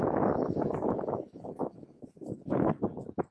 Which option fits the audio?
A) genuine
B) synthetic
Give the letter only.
B